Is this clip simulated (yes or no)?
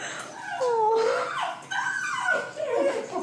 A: no